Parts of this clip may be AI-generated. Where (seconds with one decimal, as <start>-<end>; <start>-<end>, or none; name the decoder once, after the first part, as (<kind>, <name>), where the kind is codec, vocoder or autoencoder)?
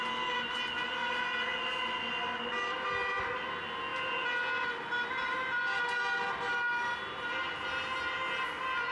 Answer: none